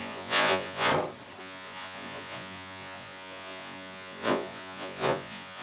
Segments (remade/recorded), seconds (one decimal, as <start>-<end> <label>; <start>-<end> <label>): 0.0-0.9 remade; 0.9-1.4 recorded; 1.4-5.6 remade